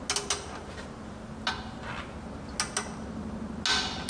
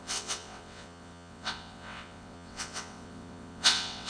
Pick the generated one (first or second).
second